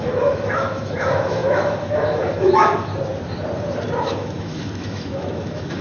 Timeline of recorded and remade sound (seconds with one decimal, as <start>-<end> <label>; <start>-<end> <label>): 0.0-2.9 remade; 2.9-4.0 recorded; 4.0-5.8 remade

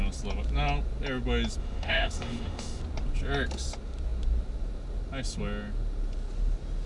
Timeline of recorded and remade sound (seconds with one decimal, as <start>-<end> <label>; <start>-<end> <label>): 0.0-1.6 recorded; 1.6-2.8 remade; 2.8-6.9 recorded

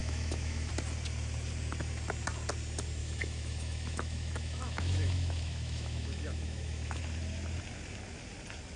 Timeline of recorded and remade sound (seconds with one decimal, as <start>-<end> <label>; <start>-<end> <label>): 0.0-0.7 remade; 0.7-3.0 recorded; 3.0-7.0 remade; 7.0-8.8 recorded

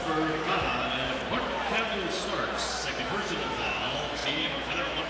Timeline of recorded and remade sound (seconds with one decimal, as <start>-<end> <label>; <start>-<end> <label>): 0.0-0.7 remade; 0.7-3.0 recorded; 3.0-5.1 remade